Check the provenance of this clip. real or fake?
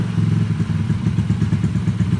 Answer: real